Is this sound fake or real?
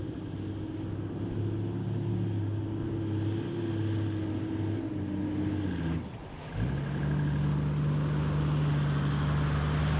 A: real